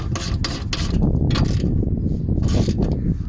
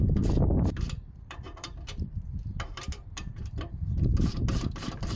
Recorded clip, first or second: first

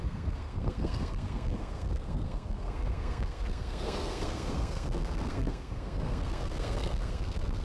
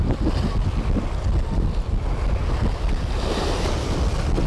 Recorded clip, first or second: second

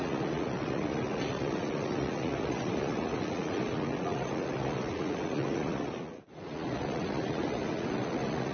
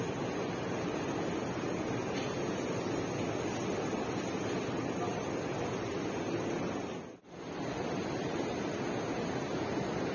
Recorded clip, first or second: second